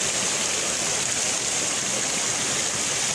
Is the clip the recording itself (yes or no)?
yes